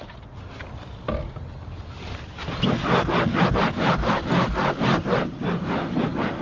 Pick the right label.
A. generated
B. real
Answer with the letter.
B